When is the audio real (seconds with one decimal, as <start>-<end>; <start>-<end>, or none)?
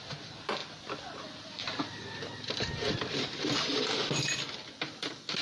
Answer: 0.0-5.4